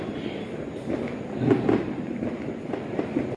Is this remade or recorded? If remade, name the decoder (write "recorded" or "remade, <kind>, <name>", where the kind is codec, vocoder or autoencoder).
recorded